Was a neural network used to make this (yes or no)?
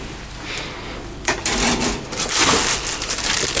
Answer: no